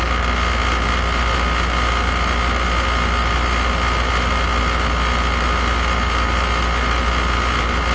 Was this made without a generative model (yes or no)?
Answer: yes